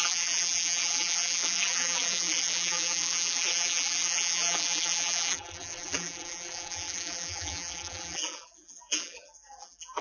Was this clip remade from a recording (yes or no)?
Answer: yes